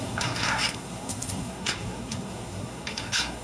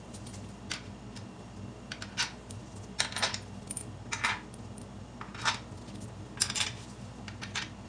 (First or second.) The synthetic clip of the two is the first